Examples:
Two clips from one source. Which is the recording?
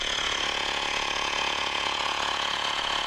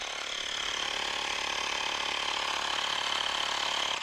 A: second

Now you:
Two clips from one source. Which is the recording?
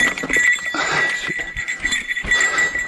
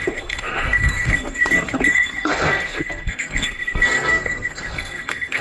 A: first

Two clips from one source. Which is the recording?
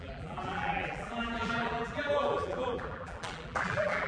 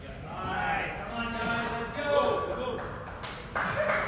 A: second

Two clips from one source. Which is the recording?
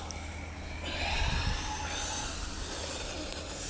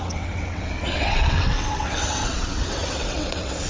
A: first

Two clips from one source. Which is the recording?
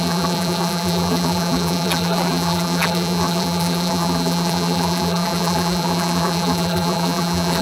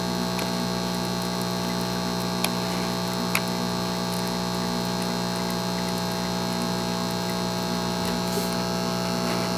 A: second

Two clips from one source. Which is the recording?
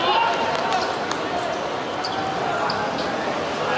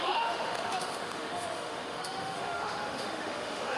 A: first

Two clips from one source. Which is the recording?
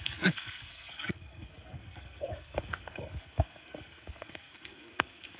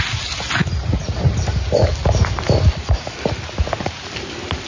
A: second